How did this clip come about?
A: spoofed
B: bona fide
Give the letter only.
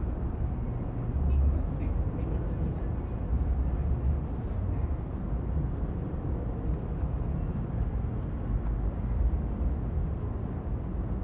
B